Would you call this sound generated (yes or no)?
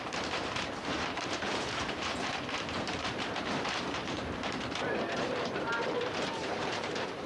yes